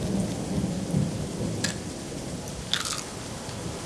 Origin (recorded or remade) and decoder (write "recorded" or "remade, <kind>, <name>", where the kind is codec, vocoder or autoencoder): recorded